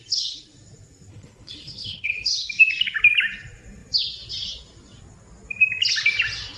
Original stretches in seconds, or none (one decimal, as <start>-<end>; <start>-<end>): 0.0-1.1; 2.3-6.6